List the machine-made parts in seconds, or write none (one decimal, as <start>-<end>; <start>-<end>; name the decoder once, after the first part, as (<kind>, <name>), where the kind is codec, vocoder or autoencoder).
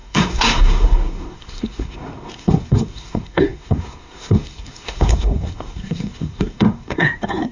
0.0-7.5 (codec, SNAC)